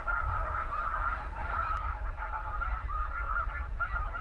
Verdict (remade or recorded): recorded